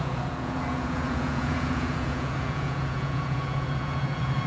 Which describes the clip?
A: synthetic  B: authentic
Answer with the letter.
A